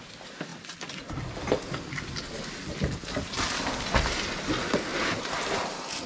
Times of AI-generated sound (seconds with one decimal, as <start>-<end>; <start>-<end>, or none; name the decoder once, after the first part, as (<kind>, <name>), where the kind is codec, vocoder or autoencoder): none